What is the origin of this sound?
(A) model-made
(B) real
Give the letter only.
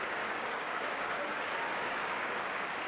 A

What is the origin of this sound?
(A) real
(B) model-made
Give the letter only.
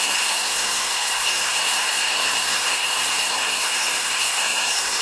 B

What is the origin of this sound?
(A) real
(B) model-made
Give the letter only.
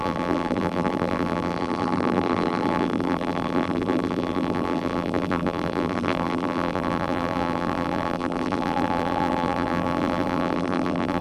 B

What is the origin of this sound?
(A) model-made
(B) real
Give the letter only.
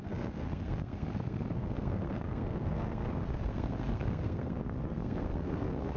A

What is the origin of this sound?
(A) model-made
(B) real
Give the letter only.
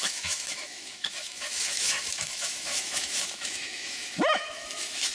A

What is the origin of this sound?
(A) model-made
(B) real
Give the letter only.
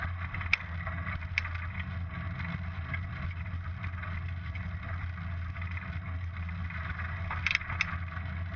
B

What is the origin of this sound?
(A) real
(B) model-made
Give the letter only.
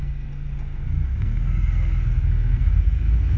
B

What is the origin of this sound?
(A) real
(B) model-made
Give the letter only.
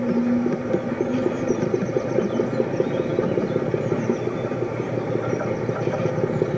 A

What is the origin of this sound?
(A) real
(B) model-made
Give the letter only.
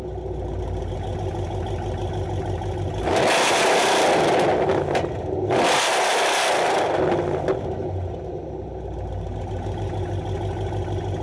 A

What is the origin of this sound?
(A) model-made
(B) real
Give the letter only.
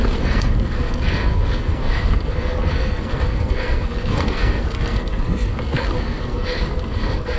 A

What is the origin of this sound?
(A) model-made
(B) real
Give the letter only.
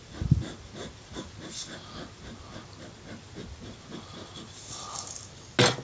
B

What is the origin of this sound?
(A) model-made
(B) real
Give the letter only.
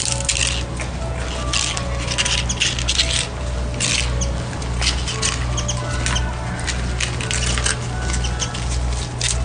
B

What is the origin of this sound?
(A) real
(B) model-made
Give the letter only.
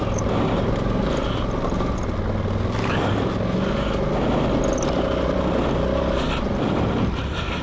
A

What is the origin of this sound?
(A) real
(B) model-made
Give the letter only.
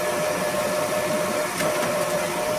A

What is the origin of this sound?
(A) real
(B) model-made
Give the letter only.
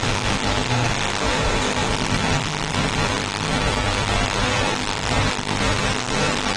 B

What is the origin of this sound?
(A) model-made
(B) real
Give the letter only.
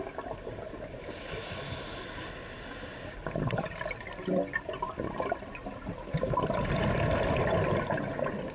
B